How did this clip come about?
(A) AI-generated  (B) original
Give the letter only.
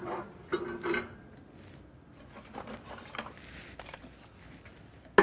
B